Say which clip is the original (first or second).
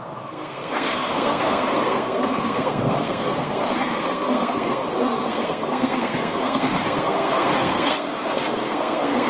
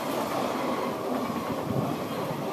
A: second